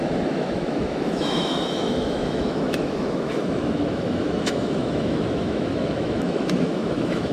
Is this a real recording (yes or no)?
no